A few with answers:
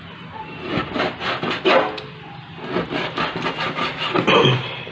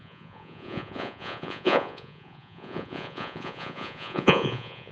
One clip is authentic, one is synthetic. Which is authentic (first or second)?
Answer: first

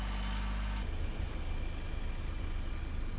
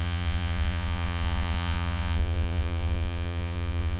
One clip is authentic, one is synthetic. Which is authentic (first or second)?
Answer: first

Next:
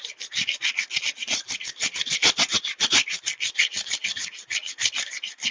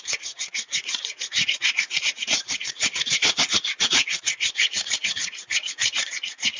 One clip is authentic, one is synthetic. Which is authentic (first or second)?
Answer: first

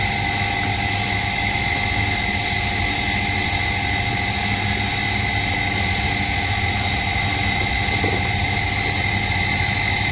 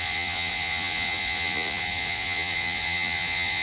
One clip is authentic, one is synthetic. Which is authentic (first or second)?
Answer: first